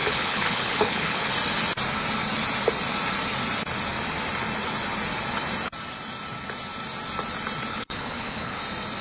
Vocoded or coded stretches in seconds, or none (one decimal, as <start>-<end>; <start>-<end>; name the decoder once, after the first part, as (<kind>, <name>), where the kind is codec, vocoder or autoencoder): 0.0-1.3 (codec, HILCodec); 7.7-8.6